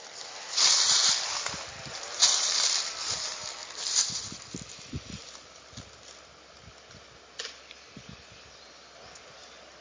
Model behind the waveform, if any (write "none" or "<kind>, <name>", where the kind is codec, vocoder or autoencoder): vocoder, BigVGAN v2